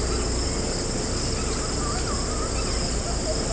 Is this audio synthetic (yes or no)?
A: no